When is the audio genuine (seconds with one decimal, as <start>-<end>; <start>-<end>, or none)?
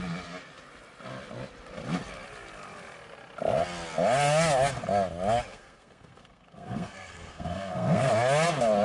0.0-5.5; 8.1-8.8